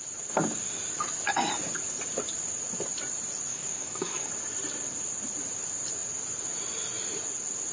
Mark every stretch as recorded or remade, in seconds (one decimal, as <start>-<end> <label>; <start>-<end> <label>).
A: 0.0-3.5 recorded; 3.5-4.3 remade; 4.3-7.7 recorded